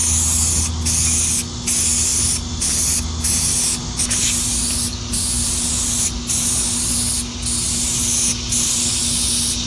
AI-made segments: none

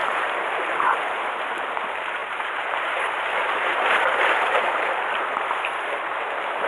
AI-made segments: 0.0-0.6; 2.2-3.0; 3.4-4.9

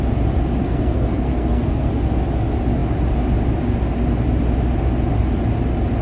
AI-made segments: 0.6-1.9